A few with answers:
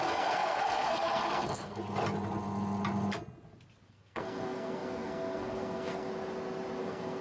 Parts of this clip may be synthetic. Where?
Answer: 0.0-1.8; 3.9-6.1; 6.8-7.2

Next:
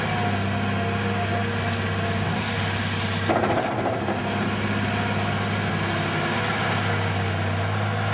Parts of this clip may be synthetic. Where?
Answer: none

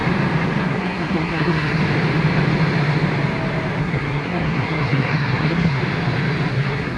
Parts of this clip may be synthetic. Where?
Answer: 0.6-1.8; 3.8-5.8; 6.5-7.0